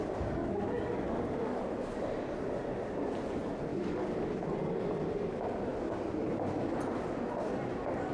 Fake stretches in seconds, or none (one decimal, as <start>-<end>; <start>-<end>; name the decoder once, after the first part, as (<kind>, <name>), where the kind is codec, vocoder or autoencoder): 0.4-1.6 (codec, DAC); 3.7-4.3